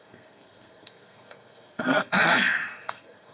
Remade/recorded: remade